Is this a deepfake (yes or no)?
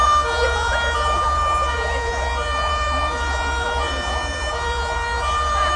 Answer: yes